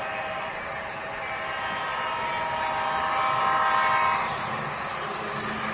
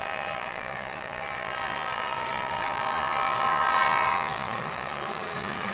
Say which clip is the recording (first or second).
first